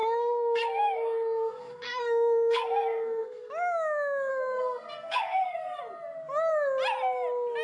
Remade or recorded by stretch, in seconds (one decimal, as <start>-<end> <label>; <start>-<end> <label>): 0.0-3.5 remade; 3.5-4.3 recorded; 4.3-5.8 remade; 5.8-7.6 recorded